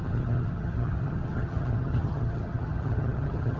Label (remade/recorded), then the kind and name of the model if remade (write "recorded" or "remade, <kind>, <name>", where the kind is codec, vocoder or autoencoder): remade, vocoder, HiFi-GAN